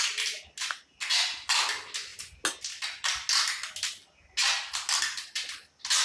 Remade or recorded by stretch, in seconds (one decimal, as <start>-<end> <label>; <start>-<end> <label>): 0.0-6.0 recorded